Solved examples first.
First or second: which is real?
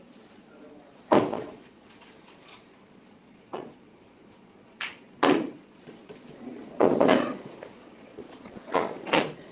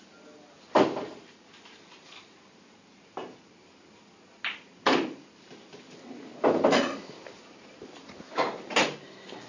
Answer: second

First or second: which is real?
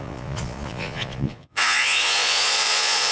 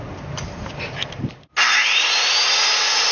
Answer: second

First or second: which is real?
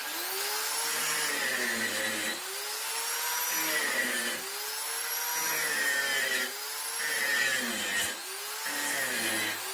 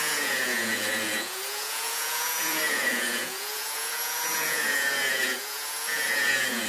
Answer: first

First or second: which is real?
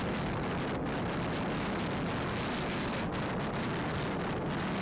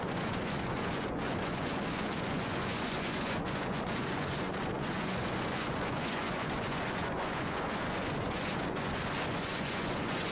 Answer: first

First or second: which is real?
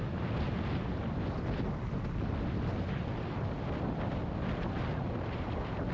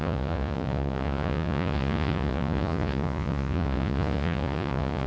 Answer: first